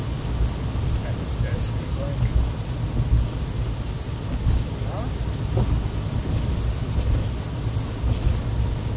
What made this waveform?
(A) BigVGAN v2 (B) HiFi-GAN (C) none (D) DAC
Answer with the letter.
C